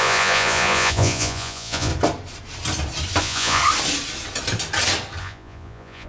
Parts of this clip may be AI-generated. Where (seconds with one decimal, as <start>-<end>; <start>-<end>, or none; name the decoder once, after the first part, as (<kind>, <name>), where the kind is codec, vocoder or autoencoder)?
0.0-1.9 (vocoder, Vocos); 3.2-3.6; 5.2-6.1